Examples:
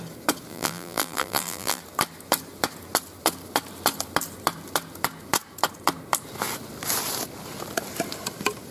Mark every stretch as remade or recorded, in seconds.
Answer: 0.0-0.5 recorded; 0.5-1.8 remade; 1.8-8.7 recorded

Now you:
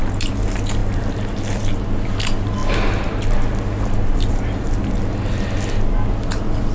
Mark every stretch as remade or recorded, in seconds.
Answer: 0.0-0.8 recorded; 0.8-1.6 remade; 1.6-2.6 recorded; 2.6-6.7 remade

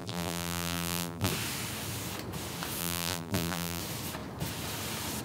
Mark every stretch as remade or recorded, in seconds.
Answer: 0.0-1.3 remade; 1.3-2.8 recorded; 2.8-3.8 remade; 3.8-5.2 recorded

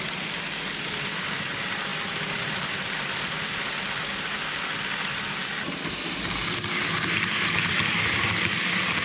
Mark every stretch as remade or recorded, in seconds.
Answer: 0.0-1.9 recorded; 1.9-3.6 remade; 3.6-9.0 recorded